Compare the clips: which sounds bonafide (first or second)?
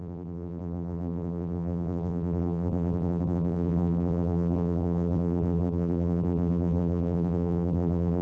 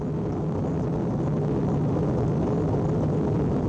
second